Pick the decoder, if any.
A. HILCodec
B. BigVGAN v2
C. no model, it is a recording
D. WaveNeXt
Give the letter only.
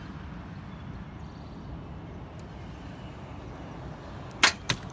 C